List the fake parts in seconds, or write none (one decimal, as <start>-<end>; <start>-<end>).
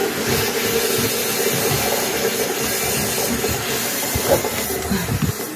none